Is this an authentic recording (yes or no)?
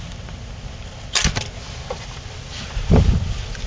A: yes